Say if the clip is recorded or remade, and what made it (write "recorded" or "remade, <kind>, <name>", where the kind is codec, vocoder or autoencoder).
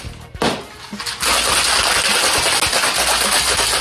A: recorded